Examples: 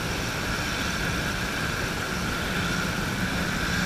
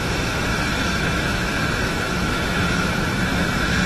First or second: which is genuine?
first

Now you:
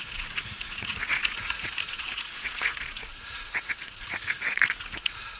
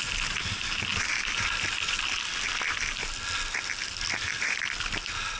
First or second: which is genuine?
second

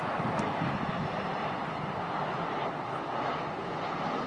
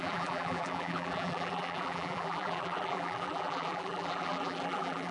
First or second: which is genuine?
first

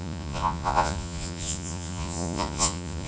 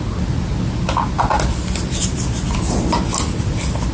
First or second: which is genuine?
second